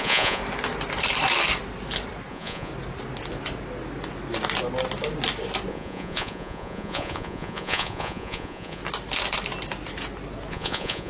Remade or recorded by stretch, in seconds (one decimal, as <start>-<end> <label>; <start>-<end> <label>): 0.0-0.4 remade; 0.4-2.3 recorded; 2.3-2.7 remade; 2.7-5.7 recorded; 5.7-8.8 remade; 8.8-10.5 recorded; 10.5-11.1 remade